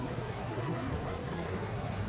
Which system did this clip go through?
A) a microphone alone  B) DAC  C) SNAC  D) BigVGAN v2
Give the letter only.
C